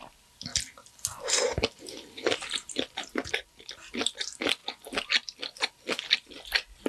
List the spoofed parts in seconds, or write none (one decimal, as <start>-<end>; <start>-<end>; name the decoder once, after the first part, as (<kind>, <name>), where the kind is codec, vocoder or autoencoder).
none